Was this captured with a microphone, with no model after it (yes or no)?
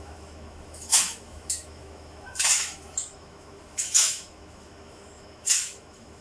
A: no